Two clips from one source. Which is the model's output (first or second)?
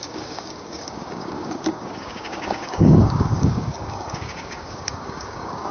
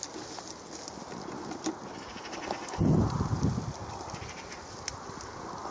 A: first